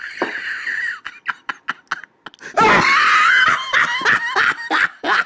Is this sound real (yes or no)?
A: yes